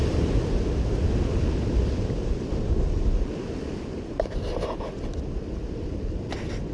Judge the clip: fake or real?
real